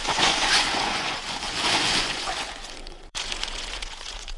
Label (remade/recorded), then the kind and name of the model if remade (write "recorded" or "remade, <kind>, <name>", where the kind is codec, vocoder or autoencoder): remade, vocoder, Vocos